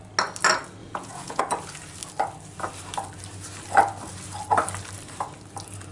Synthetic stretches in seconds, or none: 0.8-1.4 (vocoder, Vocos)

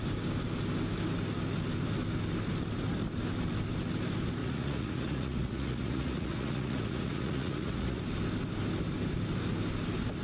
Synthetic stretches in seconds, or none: 4.4-8.0 (vocoder, Vocos)

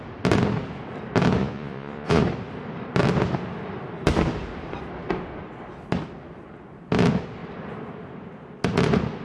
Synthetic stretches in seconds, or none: 1.4-2.2 (vocoder, Vocos)

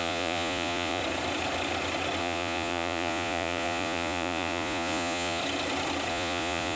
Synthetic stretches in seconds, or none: 0.0-1.0 (vocoder, Vocos); 2.2-5.4; 6.1-6.8

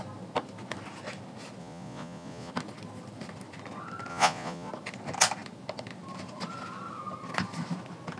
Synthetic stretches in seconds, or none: 1.6-2.5 (vocoder, Vocos); 4.1-4.7

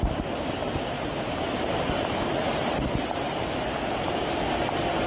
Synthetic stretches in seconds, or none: none

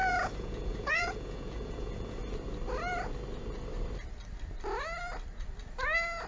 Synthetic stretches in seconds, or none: 0.0-2.2 (vocoder, Vocos)

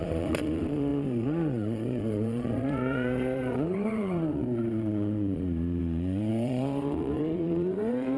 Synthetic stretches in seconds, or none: 0.0-8.2 (vocoder, Vocos)